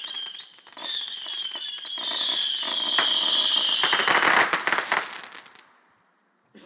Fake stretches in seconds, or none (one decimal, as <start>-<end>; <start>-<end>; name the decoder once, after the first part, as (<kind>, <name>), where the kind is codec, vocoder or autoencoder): 0.8-1.7 (vocoder, Vocos)